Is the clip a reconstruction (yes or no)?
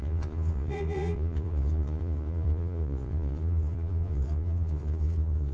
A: yes